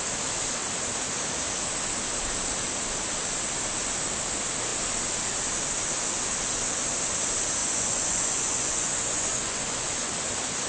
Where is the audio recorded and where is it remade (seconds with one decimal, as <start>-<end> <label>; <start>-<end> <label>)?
0.0-7.6 recorded; 7.6-10.1 remade; 10.1-10.7 recorded